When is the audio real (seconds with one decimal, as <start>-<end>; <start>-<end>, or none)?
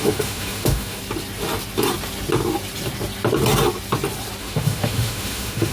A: 1.0-4.4